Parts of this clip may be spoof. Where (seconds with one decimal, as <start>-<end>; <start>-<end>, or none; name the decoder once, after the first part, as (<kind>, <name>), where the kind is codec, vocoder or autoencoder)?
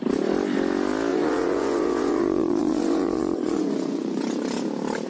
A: 1.1-4.2 (vocoder, Vocos)